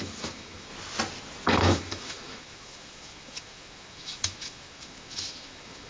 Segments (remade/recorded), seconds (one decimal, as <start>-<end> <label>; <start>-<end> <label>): 0.0-0.7 remade; 0.7-1.5 recorded; 1.5-5.9 remade